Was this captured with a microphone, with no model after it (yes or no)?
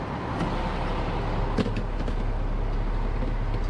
yes